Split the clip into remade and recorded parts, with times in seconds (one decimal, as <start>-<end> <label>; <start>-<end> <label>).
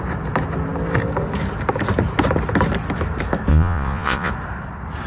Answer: 0.0-3.5 recorded; 3.5-4.3 remade; 4.3-5.1 recorded